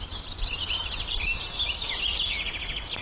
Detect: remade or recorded recorded